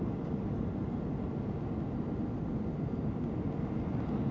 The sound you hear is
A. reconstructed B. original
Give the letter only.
B